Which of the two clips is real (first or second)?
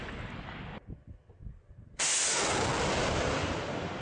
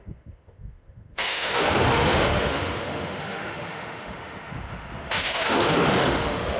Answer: first